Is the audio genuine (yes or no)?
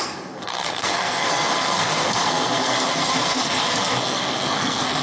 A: no